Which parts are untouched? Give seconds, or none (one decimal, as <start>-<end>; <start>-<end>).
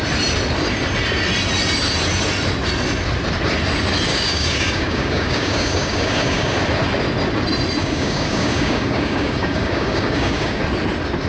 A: 0.0-4.1; 6.6-7.8; 10.6-11.3